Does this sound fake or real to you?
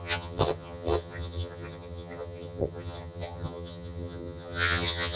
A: fake